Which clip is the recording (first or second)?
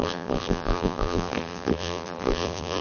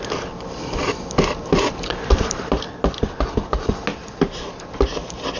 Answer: second